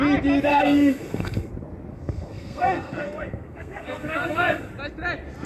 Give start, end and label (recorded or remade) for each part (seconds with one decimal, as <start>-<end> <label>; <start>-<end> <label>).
0.0-0.5 recorded; 0.5-1.5 remade; 1.5-1.9 recorded; 1.9-4.7 remade; 4.7-5.5 recorded

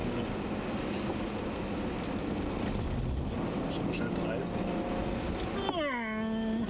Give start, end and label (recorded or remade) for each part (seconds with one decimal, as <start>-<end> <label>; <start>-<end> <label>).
0.0-6.7 recorded

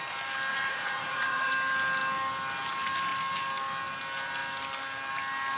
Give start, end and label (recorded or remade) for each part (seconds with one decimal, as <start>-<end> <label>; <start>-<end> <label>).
0.0-0.5 recorded; 0.5-1.5 remade; 1.5-5.6 recorded

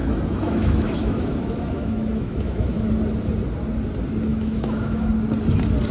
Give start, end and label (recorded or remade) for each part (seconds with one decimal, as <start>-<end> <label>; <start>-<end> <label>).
0.0-2.9 remade; 2.9-4.3 recorded; 4.3-5.1 remade; 5.1-5.9 recorded

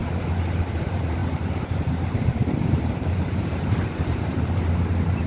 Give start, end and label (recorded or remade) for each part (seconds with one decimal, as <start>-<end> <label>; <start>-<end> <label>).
0.0-0.7 recorded; 0.7-5.3 remade

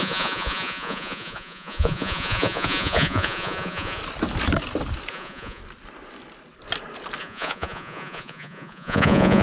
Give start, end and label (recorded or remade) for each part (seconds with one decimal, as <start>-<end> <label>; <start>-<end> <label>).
0.0-4.0 remade; 4.0-5.1 recorded; 5.1-5.6 remade; 5.6-7.2 recorded; 7.2-9.4 remade

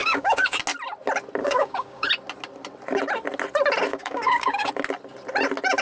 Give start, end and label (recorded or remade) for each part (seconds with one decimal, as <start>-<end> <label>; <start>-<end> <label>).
0.0-0.6 remade; 0.6-1.4 recorded; 1.4-2.1 remade; 2.1-3.9 recorded; 3.9-4.7 remade; 4.7-5.8 recorded

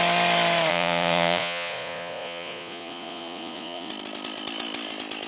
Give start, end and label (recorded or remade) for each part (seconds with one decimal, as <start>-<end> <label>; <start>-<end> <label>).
0.0-0.7 recorded; 0.7-3.9 remade; 3.9-5.3 recorded